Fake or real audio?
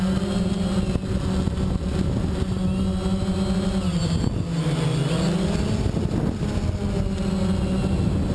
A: real